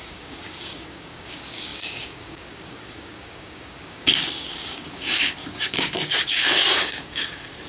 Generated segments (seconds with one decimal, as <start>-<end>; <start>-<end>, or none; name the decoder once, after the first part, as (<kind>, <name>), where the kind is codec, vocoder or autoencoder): 0.0-7.7 (codec, DAC)